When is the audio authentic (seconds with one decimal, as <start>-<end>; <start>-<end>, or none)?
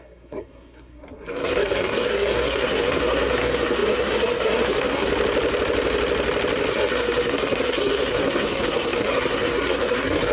5.1-6.7